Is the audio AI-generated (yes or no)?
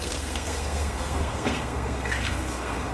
yes